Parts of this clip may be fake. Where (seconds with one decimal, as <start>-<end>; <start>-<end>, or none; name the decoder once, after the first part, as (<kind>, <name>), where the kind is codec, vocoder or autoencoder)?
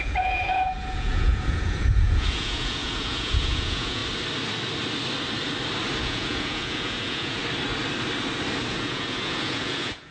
0.0-4.0 (vocoder, Vocos); 6.0-7.4; 8.7-10.1